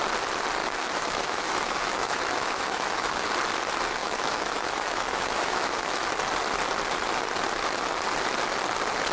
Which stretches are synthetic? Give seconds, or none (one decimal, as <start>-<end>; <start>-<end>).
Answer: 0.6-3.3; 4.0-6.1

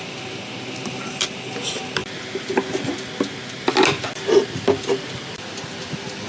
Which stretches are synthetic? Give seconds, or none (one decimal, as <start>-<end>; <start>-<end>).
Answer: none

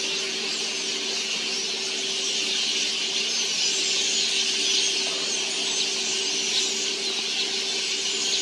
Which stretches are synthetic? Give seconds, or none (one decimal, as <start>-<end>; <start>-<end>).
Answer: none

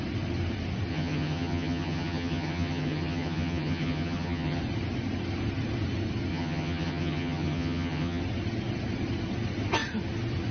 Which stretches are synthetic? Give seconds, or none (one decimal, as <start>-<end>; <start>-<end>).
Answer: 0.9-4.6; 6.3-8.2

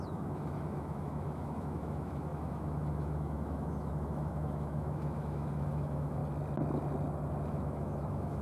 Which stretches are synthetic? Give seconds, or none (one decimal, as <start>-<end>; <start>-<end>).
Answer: 0.0-6.2; 7.5-8.4

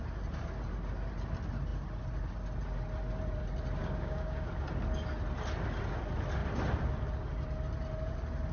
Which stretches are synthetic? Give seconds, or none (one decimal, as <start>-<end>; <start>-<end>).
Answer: 3.8-4.5

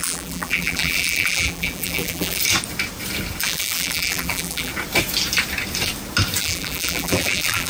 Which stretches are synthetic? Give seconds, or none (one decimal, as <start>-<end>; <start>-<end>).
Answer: 0.0-2.4; 3.4-4.7; 6.4-7.7